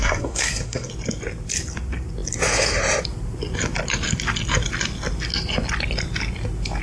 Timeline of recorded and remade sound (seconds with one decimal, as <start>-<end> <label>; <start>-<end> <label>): 0.0-0.9 remade; 0.9-6.8 recorded